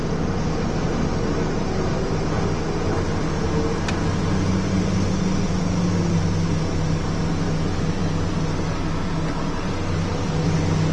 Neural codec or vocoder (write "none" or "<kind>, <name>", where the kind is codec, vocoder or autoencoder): none